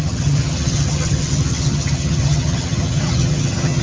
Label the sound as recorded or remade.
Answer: remade